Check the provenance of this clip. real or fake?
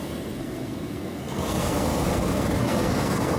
fake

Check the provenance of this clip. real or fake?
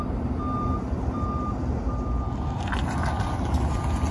real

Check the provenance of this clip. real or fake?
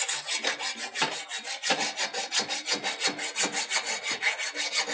real